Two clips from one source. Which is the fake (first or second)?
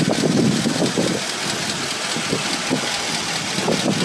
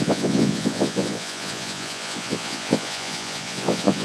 second